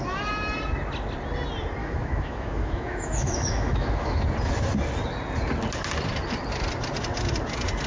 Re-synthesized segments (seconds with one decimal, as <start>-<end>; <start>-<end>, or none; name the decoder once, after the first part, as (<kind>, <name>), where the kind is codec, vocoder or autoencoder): 1.8-4.2 (autoencoder, DAC-VAE)